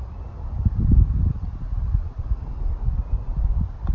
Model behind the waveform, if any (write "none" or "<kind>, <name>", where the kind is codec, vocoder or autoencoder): none